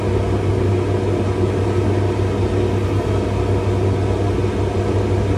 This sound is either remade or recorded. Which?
recorded